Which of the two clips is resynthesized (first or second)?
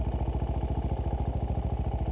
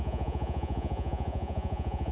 second